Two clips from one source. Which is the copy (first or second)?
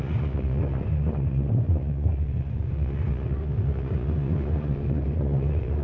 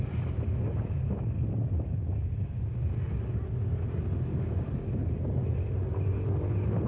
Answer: first